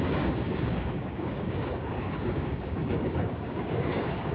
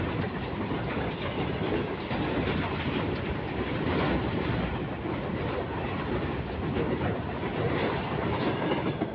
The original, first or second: second